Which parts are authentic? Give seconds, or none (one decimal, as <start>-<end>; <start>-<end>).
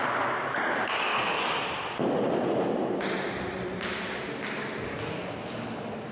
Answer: 0.0-1.1; 1.6-6.1